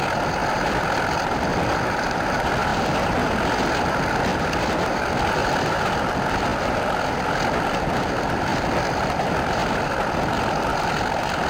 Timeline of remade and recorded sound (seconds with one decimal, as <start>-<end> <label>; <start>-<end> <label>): 0.0-11.5 recorded